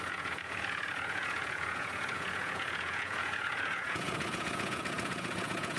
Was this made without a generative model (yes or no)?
no